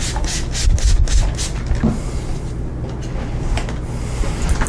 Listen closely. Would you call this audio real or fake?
real